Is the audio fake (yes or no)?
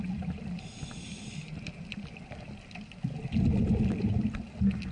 no